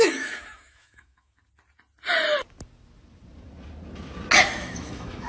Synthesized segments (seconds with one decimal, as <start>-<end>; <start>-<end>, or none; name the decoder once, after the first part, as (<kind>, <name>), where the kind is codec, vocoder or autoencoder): 0.0-1.4 (autoencoder, DAC-VAE); 4.6-5.3